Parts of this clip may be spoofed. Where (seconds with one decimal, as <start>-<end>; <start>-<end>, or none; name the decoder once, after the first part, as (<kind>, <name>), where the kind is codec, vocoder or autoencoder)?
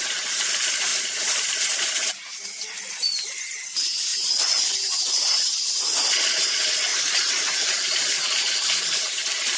6.9-9.2 (vocoder, BigVGAN v2)